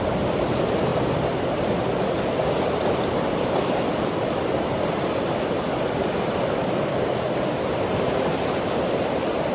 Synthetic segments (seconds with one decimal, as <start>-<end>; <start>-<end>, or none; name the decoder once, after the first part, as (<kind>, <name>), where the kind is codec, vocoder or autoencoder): none